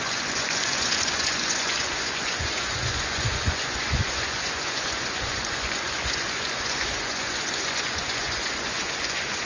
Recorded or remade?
remade